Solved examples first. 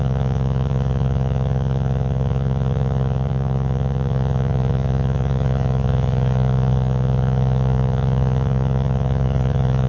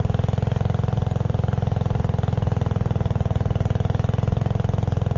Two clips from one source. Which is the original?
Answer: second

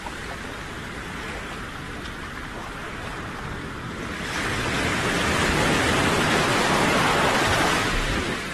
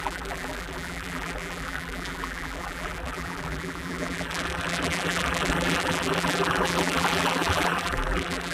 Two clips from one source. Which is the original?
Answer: first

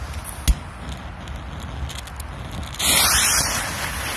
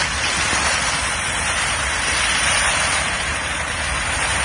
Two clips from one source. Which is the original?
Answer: first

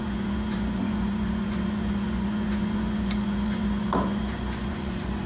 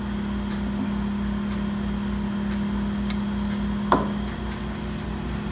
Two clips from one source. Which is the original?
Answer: second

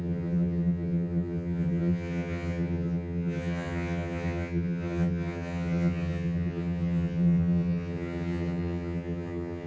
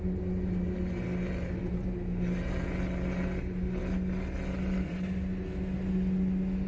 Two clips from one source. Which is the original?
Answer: second